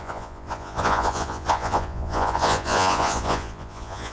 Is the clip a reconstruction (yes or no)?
yes